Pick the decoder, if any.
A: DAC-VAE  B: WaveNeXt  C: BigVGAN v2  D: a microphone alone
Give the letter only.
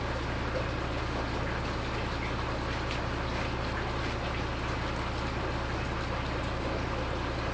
D